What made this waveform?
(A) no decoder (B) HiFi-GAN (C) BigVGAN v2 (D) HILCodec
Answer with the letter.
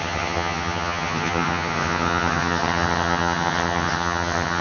B